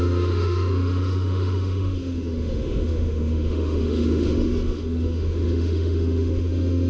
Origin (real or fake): fake